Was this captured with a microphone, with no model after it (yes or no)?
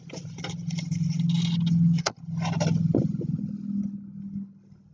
yes